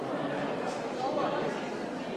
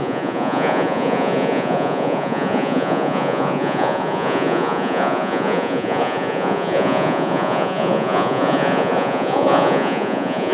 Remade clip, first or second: second